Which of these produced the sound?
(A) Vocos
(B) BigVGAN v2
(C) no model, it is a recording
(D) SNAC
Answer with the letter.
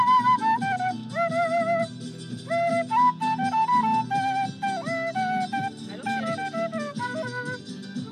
C